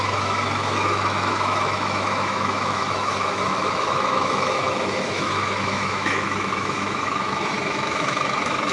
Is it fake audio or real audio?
fake